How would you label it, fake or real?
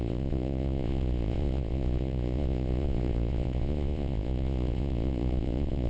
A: fake